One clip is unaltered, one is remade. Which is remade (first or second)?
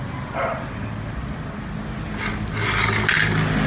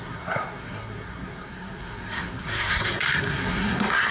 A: second